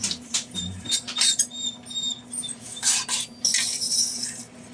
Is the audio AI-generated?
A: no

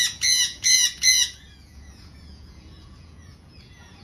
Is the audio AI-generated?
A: yes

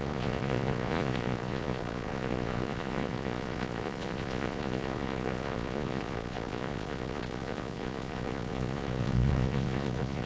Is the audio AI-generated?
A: yes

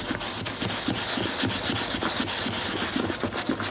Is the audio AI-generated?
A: no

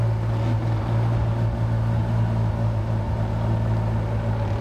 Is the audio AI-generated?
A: no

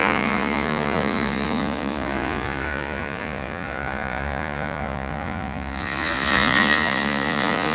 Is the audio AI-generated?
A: yes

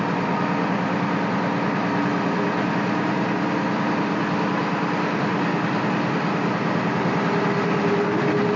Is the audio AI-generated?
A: no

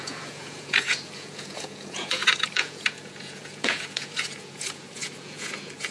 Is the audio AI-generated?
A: yes